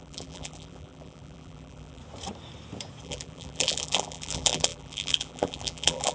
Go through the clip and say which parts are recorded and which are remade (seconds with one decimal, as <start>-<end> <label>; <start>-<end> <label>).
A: 0.0-2.0 remade; 2.0-3.0 recorded; 3.0-6.1 remade